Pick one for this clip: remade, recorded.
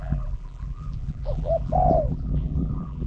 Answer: remade